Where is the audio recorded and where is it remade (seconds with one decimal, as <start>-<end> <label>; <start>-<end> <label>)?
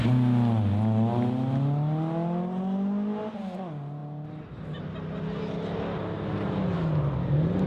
0.0-7.7 recorded